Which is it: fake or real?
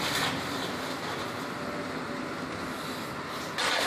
real